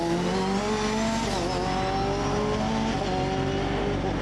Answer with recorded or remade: recorded